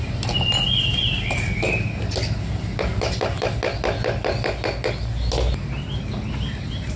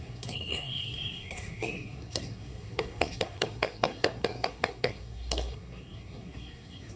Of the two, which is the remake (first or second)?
second